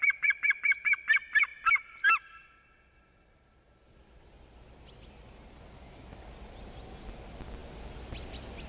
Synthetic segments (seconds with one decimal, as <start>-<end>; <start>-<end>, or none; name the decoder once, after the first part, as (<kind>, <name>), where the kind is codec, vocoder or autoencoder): none